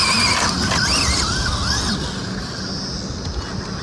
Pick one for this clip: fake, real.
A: real